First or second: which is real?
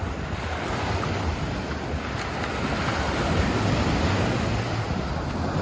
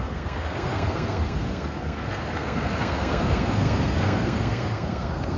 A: first